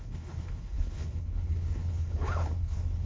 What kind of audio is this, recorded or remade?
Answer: remade